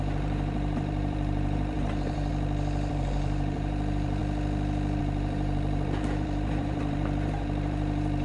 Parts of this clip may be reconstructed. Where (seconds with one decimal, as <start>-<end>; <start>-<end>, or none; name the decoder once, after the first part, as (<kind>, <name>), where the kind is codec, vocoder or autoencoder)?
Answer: 0.0-2.3 (vocoder, BigVGAN v2); 2.9-4.2; 5.0-8.2